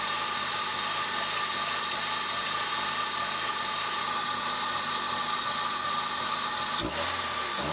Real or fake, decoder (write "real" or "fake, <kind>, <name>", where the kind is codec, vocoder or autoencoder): real